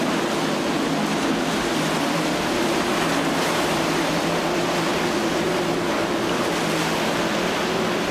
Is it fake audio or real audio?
real